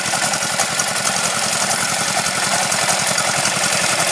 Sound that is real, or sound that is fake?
real